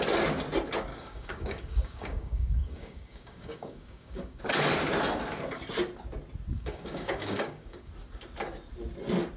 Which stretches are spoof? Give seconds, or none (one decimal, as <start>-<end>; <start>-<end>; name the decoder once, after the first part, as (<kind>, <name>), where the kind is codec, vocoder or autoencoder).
0.9-4.4 (codec, DAC); 6.5-7.9